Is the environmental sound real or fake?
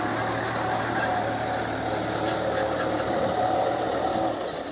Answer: real